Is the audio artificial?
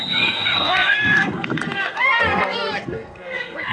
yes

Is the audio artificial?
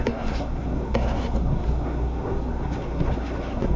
yes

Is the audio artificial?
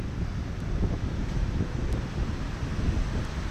no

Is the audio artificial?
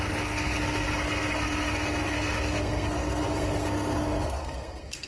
yes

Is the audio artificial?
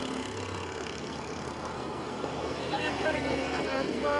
yes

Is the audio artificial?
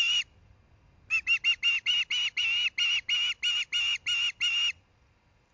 no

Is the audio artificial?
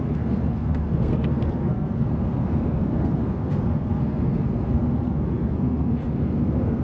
yes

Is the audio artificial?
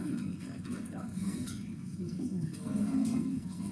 yes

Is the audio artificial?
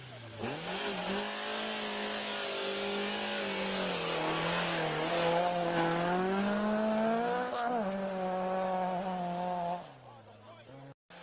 no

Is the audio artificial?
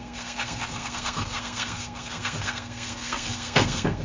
yes